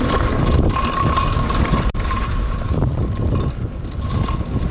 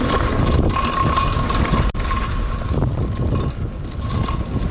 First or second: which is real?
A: second